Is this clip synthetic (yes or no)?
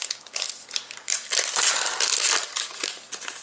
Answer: no